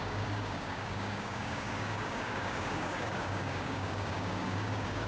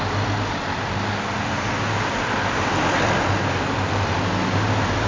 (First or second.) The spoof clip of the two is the first